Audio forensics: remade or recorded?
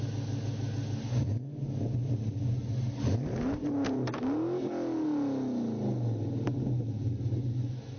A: recorded